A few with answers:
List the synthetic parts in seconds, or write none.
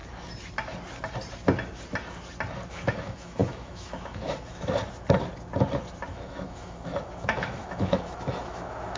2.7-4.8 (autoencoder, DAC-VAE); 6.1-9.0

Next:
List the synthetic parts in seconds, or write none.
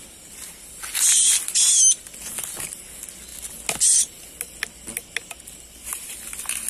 none